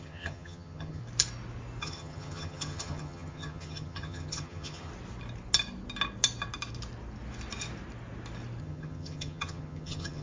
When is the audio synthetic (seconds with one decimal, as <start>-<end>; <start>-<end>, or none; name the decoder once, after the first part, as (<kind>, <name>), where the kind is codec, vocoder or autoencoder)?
0.0-1.0 (vocoder, HiFi-GAN); 1.8-4.9; 8.6-10.2